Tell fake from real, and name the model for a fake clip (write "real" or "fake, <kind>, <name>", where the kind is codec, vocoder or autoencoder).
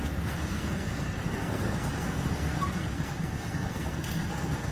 fake, codec, SNAC